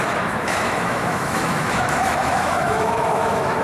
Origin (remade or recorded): remade